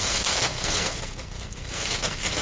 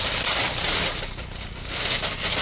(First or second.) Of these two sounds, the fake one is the first